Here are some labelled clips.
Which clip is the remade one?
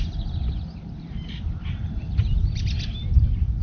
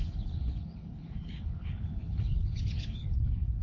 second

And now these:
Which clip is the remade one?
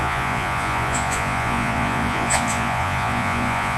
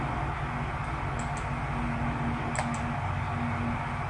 first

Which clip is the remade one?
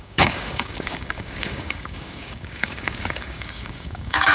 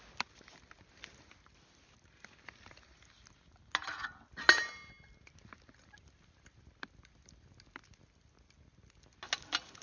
first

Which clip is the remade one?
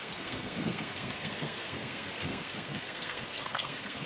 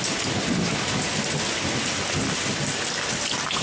first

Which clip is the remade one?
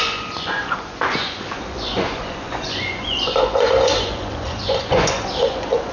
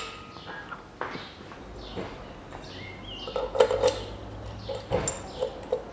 first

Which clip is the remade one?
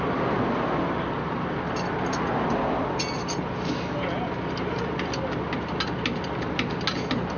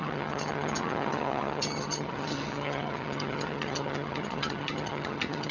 second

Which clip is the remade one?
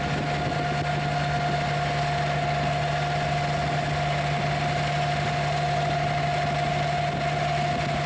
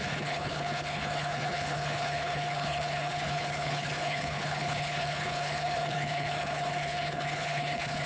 second